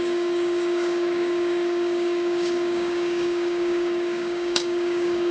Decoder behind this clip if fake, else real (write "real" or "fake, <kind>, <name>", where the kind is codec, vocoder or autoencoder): fake, codec, DAC